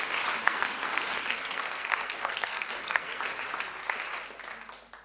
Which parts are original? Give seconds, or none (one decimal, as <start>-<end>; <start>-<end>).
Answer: 0.0-0.4; 3.2-5.0